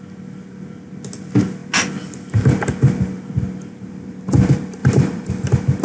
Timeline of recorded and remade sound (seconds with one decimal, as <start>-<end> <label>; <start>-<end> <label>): 0.0-4.8 recorded; 4.8-5.3 remade; 5.3-5.8 recorded